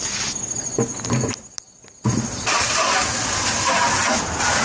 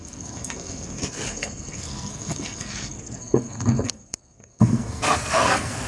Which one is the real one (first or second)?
first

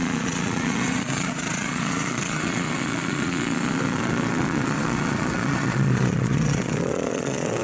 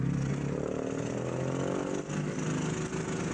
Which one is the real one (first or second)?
second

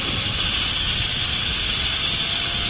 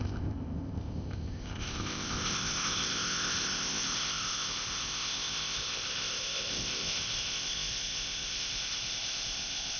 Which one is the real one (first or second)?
first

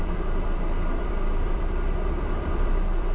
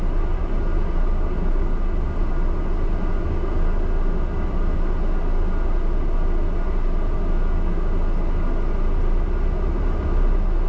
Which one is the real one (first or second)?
second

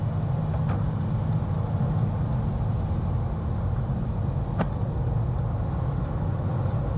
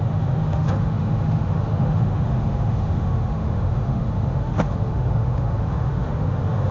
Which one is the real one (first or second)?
first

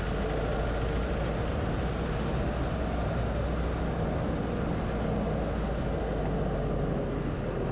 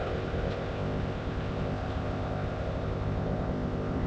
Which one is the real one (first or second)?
first